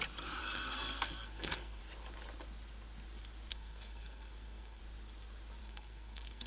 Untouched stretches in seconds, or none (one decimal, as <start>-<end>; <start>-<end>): 0.0-0.4; 1.8-3.5; 4.8-5.6